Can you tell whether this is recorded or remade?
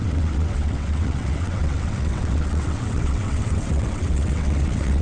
remade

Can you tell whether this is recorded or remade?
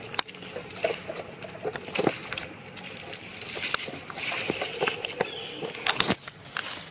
recorded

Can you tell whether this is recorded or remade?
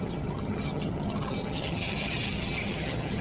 remade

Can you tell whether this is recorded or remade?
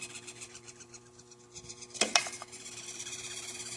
remade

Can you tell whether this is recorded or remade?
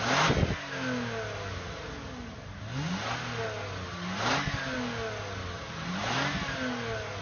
recorded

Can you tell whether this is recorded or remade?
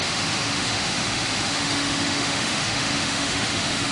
remade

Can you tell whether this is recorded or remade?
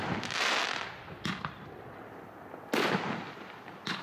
recorded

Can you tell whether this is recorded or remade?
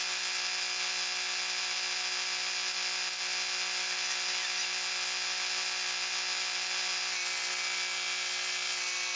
recorded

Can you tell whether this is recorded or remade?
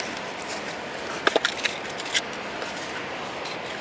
recorded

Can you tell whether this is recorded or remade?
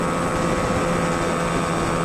recorded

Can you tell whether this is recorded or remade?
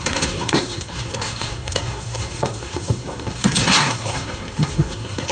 remade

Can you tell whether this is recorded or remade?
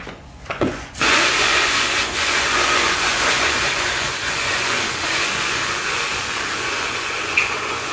remade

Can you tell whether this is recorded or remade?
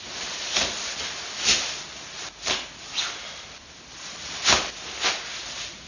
recorded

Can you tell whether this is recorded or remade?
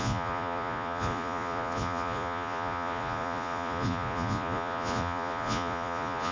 remade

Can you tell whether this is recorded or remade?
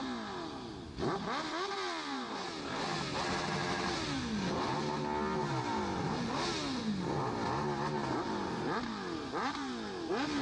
recorded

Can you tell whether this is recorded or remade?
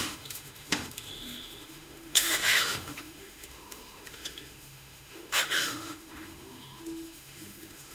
remade